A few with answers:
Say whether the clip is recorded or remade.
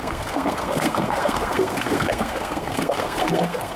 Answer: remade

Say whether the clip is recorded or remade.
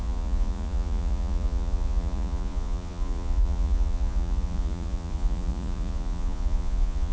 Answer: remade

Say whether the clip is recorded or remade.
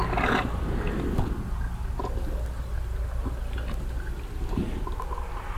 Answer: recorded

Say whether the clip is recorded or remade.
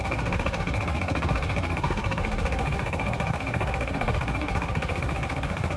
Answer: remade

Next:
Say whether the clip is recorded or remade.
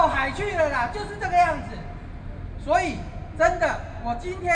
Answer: recorded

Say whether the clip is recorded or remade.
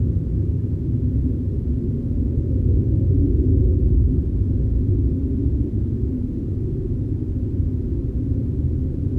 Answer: recorded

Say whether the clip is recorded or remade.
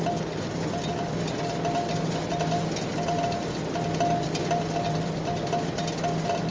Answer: recorded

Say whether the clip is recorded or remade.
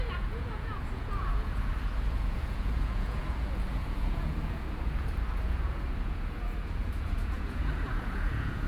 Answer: remade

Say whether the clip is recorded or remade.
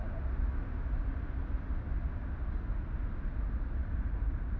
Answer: recorded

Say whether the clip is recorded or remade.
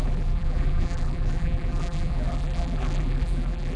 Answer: remade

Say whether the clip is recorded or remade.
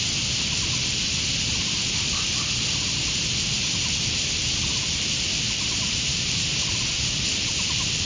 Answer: remade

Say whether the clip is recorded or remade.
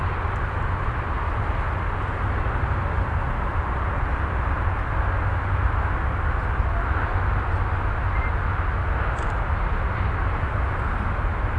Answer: recorded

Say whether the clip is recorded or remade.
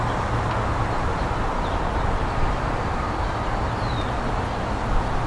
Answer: remade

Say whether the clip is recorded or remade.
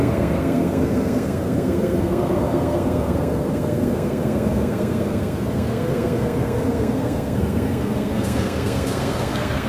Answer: remade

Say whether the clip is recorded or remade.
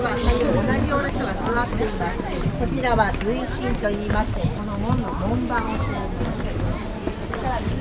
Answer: recorded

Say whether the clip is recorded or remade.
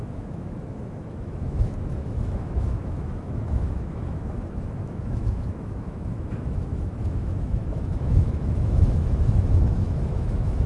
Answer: remade